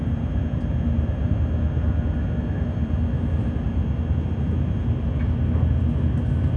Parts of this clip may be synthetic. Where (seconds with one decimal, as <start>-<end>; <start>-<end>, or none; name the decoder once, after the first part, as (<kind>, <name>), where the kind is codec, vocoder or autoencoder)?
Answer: none